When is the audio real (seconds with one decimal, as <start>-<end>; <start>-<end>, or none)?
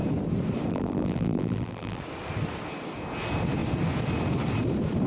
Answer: 0.0-0.7; 2.0-5.1